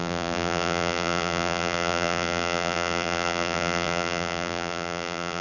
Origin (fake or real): fake